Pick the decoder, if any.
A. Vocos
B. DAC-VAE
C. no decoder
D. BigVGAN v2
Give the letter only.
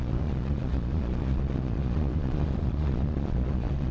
A